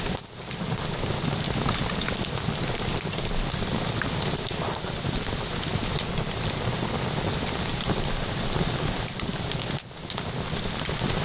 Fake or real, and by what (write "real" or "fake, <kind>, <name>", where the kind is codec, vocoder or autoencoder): real